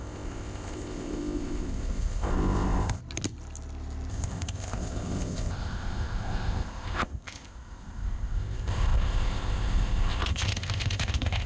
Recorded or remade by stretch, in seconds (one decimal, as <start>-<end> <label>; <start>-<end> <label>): 0.0-3.0 remade; 3.0-4.1 recorded; 4.1-11.5 remade